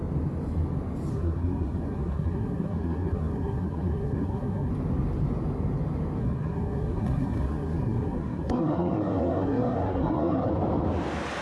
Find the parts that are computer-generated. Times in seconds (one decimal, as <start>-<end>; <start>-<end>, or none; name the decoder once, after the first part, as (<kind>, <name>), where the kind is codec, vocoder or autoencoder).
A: 1.1-4.7 (codec, SNAC); 6.2-10.5